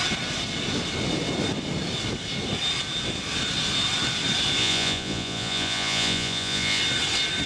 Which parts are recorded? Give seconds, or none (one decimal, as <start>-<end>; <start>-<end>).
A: 0.0-4.6; 6.8-7.5